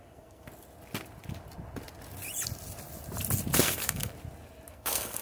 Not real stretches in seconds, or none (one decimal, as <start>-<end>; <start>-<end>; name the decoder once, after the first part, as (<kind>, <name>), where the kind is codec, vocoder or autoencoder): 0.0-0.5 (codec, SNAC); 3.6-4.1; 4.7-5.2